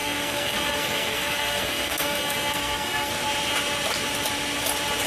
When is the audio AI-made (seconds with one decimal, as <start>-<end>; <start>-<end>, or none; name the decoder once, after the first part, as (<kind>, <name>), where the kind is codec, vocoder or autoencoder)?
0.0-3.1 (codec, SNAC)